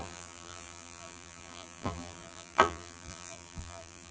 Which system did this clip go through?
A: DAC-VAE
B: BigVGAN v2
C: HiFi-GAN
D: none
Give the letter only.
B